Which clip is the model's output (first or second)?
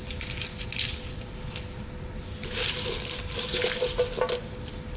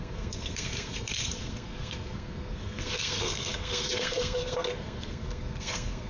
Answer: second